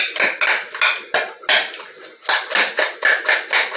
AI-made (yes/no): no